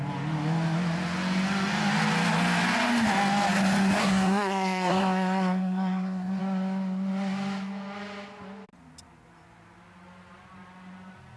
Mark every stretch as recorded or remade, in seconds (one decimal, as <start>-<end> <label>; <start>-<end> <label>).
0.0-4.0 recorded; 4.0-6.4 remade; 6.4-11.4 recorded